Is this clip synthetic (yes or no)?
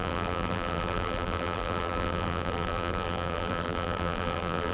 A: yes